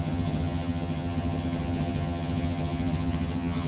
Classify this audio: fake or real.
fake